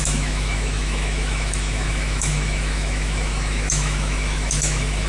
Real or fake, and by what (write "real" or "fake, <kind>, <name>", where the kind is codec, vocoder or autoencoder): fake, autoencoder, DAC-VAE